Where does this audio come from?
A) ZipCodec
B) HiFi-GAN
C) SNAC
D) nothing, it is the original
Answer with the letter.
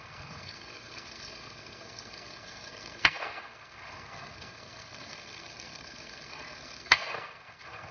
C